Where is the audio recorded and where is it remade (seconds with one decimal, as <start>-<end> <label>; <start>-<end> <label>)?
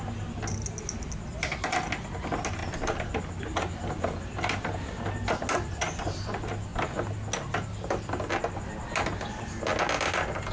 0.0-10.5 recorded